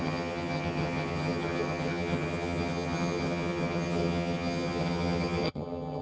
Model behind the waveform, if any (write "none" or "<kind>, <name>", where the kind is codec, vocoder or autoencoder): vocoder, HiFi-GAN